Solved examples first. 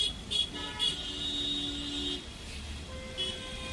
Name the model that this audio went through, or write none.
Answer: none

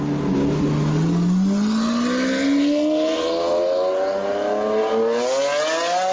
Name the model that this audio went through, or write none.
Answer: none